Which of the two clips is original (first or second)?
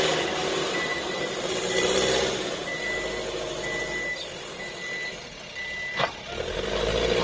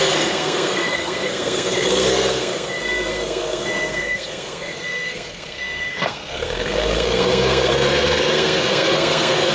first